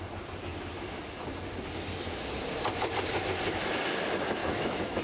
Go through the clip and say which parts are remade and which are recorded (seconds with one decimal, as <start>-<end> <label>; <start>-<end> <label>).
0.0-4.4 recorded; 4.4-5.0 remade